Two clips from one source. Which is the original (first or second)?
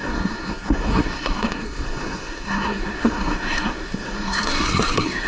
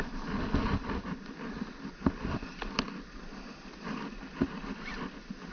second